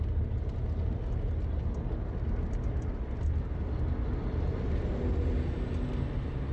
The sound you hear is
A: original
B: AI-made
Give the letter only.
A